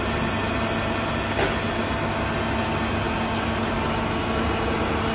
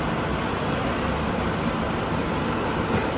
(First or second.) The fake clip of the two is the second